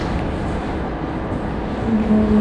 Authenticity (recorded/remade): recorded